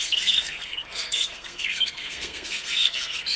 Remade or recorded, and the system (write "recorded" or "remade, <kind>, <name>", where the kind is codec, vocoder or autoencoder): remade, codec, SNAC